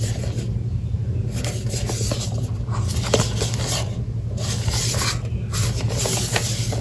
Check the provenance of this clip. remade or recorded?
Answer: recorded